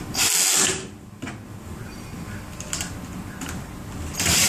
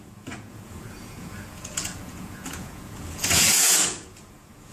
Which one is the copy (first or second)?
second